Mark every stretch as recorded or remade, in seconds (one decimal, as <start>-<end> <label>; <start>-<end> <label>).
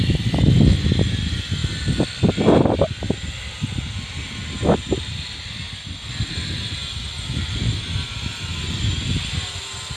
0.0-10.0 recorded